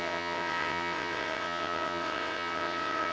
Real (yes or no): no